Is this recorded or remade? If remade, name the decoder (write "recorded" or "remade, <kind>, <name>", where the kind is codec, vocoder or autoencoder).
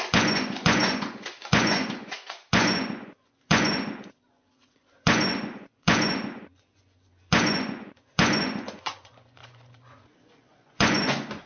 remade, vocoder, Vocos